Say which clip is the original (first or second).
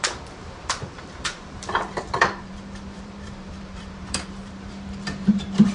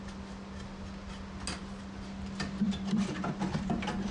second